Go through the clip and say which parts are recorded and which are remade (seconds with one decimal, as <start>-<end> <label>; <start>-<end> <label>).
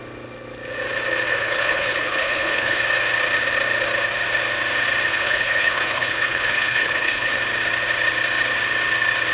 0.0-1.3 recorded; 1.3-2.8 remade; 2.8-5.1 recorded; 5.1-7.4 remade; 7.4-9.3 recorded